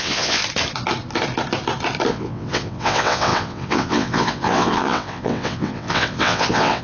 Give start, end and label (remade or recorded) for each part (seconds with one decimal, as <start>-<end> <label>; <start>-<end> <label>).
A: 0.0-0.4 remade; 0.4-2.1 recorded; 2.1-6.8 remade